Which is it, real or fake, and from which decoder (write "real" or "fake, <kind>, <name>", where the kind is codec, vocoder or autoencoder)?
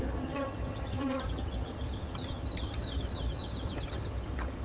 fake, vocoder, HiFi-GAN